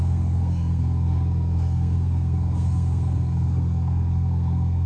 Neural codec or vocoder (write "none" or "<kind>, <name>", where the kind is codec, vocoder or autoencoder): codec, SNAC